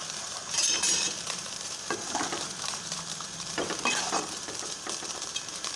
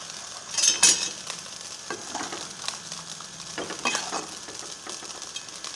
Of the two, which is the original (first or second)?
second